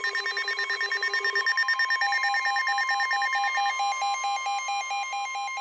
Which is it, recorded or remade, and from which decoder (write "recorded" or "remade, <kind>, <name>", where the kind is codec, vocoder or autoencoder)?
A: recorded